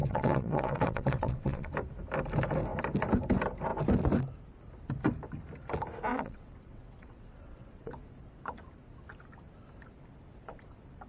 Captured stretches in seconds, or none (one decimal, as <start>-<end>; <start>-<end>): 1.7-6.1; 7.9-11.1

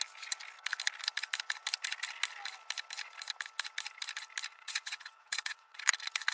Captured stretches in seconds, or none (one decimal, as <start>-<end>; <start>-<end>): 0.0-4.5; 5.8-6.3

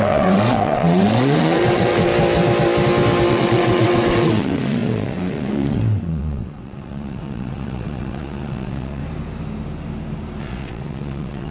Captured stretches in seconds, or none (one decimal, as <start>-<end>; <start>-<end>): 2.1-3.3; 9.0-10.4

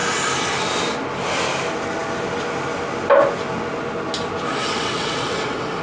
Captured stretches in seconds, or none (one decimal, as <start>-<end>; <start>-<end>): 0.0-4.6